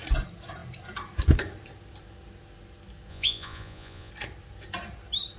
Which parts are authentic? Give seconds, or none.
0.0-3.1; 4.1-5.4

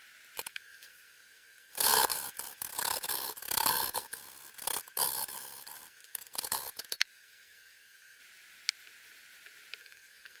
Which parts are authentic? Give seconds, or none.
0.0-0.5; 8.2-9.8

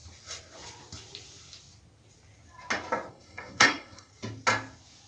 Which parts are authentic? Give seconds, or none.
0.0-3.1; 4.1-5.1

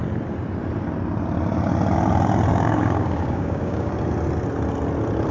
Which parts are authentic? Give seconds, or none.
0.0-2.5; 3.9-5.3

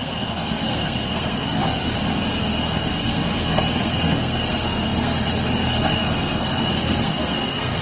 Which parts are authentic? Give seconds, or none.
1.6-2.3